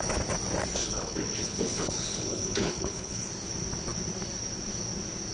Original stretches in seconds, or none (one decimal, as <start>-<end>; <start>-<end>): 0.0-0.8; 3.3-5.3